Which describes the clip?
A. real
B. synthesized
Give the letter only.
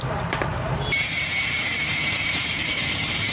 B